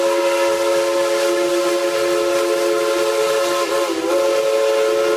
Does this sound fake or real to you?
real